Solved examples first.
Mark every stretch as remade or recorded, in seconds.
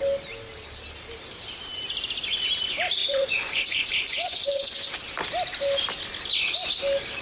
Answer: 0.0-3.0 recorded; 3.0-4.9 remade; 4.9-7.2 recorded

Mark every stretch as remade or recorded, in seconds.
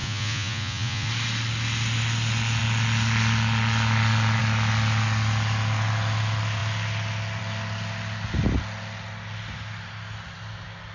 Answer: 0.0-1.1 remade; 1.1-10.9 recorded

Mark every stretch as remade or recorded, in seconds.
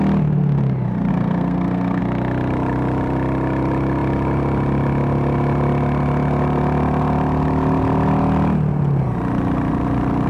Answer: 0.0-1.1 recorded; 1.1-2.0 remade; 2.0-10.3 recorded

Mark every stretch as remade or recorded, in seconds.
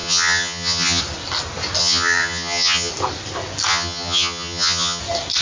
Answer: 0.0-1.0 remade; 1.0-1.8 recorded; 1.8-2.9 remade; 2.9-3.7 recorded; 3.7-5.0 remade; 5.0-5.4 recorded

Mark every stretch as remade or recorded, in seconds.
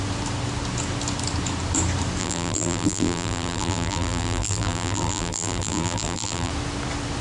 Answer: 0.0-2.2 recorded; 2.2-6.5 remade; 6.5-7.2 recorded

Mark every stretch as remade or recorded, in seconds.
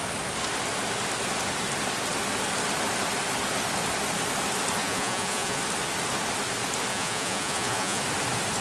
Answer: 0.0-4.8 recorded; 4.8-5.6 remade; 5.6-6.9 recorded; 6.9-8.0 remade; 8.0-8.6 recorded